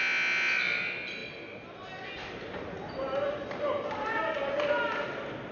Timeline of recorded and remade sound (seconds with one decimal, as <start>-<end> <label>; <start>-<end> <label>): 0.0-5.5 recorded